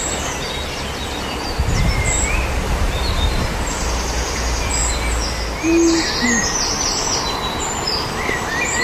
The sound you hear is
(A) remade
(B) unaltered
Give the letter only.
B